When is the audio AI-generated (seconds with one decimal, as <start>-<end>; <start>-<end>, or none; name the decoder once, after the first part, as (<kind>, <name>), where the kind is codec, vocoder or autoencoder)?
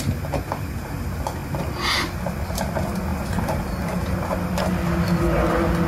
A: none